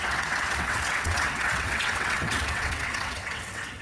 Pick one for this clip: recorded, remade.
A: remade